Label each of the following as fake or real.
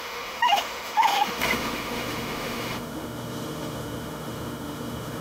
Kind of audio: fake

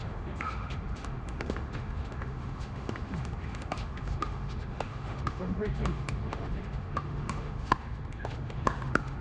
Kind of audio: fake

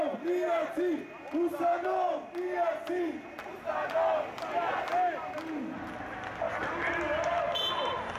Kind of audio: real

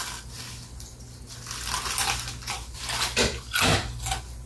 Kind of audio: real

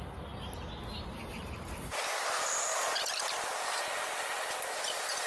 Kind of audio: real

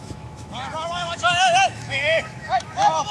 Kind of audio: fake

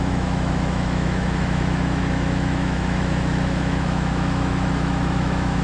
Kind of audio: fake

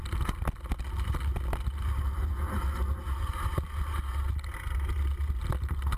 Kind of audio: real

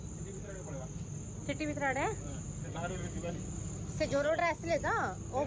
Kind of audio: real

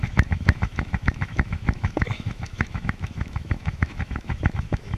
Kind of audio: fake